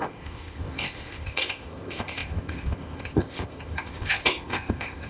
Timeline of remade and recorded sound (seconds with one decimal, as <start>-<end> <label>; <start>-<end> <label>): 0.0-5.1 remade